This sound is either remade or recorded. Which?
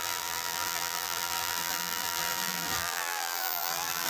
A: remade